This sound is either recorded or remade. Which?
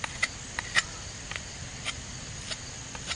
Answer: recorded